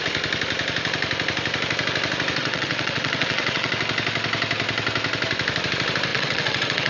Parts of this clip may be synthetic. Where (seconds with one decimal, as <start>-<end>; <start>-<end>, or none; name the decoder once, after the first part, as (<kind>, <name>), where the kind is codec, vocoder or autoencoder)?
2.4-3.7 (vocoder, WaveNeXt); 6.1-6.9